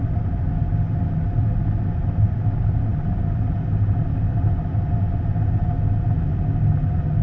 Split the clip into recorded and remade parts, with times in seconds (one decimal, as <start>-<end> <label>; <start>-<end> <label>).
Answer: 0.0-7.2 recorded